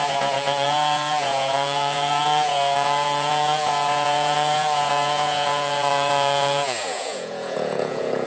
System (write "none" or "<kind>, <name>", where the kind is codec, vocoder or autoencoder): vocoder, Vocos